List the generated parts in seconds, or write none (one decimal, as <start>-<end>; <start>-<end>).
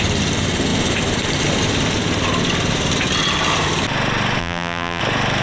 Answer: 4.4-5.0